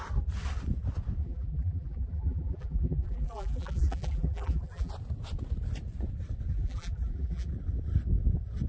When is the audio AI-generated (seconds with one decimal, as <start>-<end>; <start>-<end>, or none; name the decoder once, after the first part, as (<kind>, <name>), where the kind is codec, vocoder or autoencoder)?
1.2-4.9 (vocoder, BigVGAN v2); 6.5-7.5